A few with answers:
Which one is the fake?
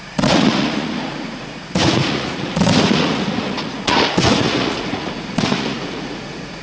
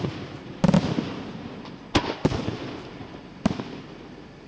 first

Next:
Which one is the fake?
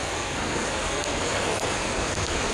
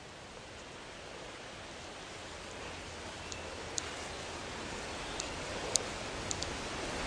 first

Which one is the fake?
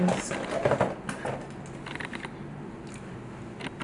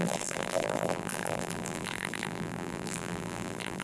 second